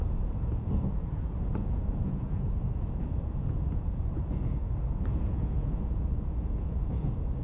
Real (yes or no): no